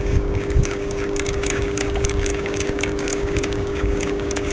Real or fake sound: fake